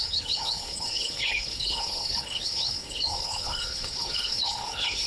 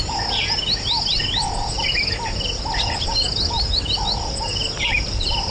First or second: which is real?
second